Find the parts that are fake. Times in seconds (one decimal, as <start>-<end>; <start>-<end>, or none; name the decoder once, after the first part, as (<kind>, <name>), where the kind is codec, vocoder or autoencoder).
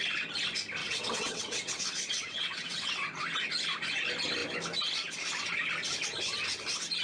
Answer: 0.8-3.2 (vocoder, WaveNeXt)